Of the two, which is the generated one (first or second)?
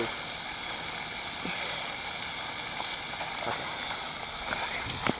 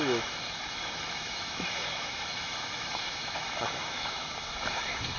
second